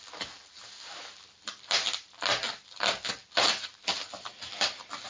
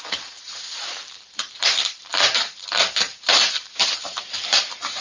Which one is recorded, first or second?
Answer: first